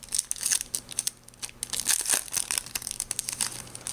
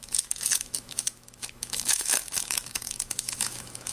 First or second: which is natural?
first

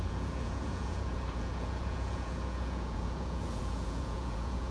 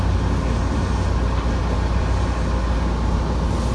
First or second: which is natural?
second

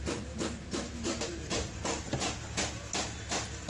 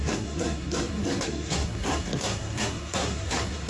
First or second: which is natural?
first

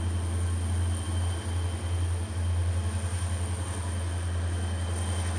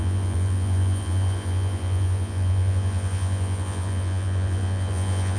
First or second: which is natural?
first